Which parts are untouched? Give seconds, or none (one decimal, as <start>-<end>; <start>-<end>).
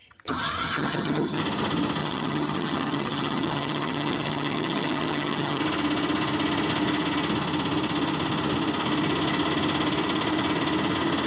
1.4-2.0; 5.6-11.3